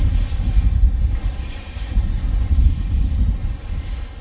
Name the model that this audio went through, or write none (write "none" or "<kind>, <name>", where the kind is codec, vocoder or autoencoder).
none